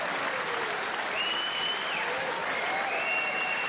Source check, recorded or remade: recorded